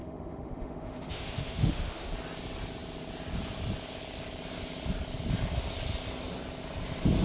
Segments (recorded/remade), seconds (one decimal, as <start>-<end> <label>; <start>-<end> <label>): 0.0-2.1 remade; 2.1-7.2 recorded